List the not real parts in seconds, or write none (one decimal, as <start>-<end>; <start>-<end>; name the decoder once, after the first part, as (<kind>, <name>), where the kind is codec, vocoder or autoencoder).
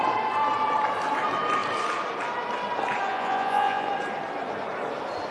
3.1-3.9 (vocoder, Vocos)